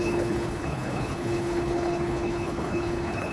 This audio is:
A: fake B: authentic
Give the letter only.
A